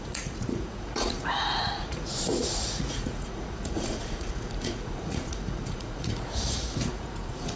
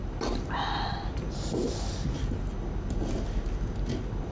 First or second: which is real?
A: second